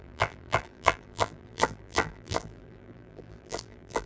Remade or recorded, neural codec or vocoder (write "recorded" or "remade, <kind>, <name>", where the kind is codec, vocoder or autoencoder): remade, vocoder, BigVGAN v2